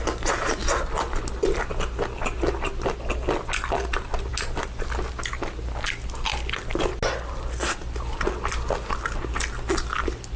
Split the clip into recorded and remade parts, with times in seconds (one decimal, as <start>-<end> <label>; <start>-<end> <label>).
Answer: 0.0-10.4 recorded